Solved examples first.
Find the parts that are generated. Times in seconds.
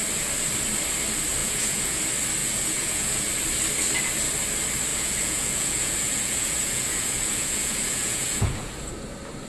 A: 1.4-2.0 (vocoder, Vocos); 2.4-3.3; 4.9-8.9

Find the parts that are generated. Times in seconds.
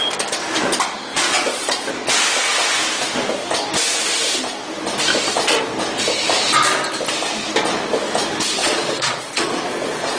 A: 1.1-1.9 (vocoder, Vocos); 8.6-10.2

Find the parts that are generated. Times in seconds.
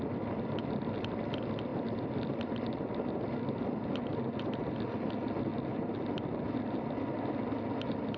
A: none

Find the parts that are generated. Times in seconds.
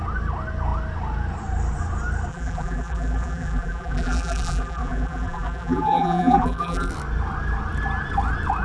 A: 2.3-6.9 (vocoder, BigVGAN v2)